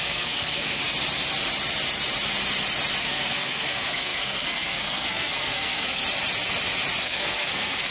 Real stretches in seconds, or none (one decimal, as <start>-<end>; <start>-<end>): 0.8-3.0; 6.0-7.0